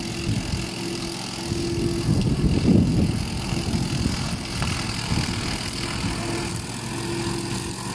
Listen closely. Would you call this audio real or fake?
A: real